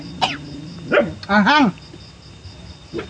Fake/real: real